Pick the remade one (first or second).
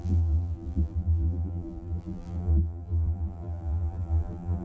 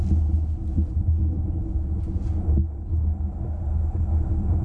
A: first